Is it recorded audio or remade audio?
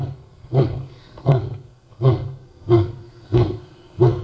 remade